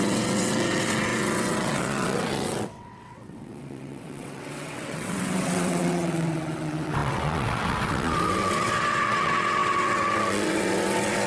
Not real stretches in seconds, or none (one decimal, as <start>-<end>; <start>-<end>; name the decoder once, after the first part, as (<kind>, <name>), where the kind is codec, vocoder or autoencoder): 0.0-11.3 (vocoder, WaveNeXt)